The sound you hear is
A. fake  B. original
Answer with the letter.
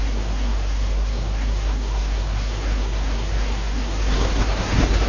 A